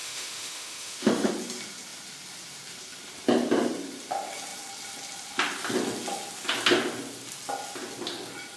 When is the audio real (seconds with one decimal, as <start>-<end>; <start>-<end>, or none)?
1.3-8.6